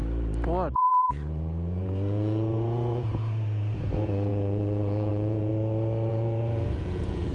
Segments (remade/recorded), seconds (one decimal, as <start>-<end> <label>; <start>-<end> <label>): 0.0-0.7 recorded; 0.7-5.5 remade; 5.5-6.1 recorded; 6.1-7.3 remade